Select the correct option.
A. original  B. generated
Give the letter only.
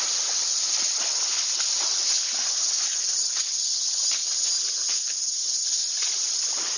A